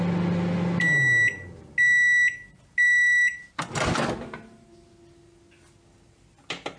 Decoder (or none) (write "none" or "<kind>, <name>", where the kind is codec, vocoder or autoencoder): none